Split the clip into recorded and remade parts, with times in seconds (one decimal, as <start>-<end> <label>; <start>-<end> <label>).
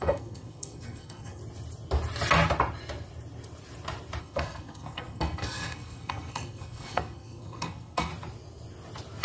0.0-1.4 remade; 1.4-4.2 recorded; 4.2-8.1 remade; 8.1-9.2 recorded